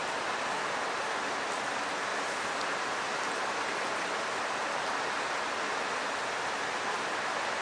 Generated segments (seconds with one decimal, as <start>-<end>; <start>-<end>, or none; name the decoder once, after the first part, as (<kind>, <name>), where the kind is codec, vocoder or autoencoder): none

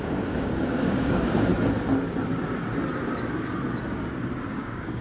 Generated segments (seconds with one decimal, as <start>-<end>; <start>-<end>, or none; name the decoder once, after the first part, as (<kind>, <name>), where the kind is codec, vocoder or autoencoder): 0.0-1.5 (codec, DAC); 4.5-5.0

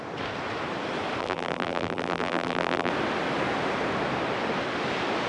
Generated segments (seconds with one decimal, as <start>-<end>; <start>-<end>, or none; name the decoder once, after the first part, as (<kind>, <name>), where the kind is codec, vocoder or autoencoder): 1.2-2.9 (vocoder, BigVGAN v2)

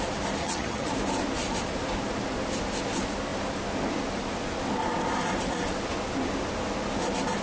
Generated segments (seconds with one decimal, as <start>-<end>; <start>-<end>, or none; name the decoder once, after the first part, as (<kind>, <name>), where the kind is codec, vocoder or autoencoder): 0.4-0.9 (vocoder, HiFi-GAN)